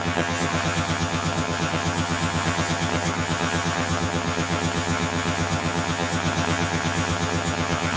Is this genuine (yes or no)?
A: no